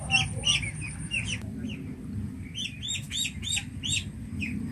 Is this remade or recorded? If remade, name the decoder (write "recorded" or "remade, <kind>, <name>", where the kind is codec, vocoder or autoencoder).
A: recorded